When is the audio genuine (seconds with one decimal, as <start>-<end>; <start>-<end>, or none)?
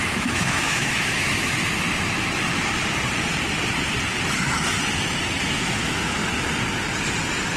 1.6-5.4; 6.2-7.6